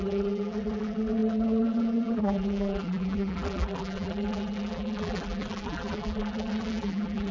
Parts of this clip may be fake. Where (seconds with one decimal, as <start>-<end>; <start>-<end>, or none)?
0.0-7.3